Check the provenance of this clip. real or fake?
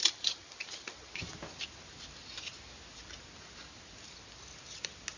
real